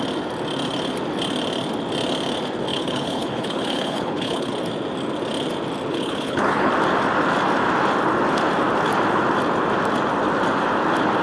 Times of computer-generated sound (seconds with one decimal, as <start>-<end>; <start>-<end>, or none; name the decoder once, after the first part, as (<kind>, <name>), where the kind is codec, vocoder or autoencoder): 2.7-4.5 (codec, HILCodec); 5.9-6.7